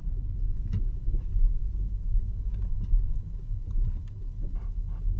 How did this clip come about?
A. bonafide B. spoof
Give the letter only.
A